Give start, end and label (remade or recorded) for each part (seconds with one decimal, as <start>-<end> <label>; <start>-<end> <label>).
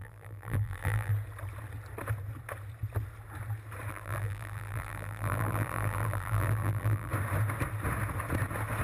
0.0-1.1 remade; 1.1-3.9 recorded; 3.9-7.1 remade; 7.1-8.8 recorded